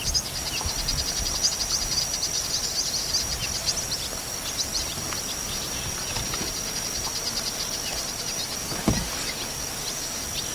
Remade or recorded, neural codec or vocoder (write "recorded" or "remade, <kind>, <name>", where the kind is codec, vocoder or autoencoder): recorded